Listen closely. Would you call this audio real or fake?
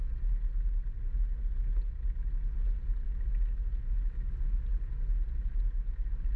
real